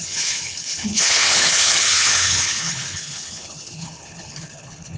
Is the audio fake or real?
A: fake